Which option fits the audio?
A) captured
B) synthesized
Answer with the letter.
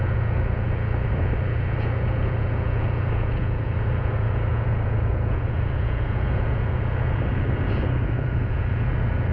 B